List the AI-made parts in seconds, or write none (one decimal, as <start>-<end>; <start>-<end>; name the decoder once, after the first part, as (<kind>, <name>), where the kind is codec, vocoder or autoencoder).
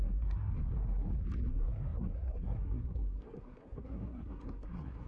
0.0-0.5 (codec, SNAC); 1.5-5.1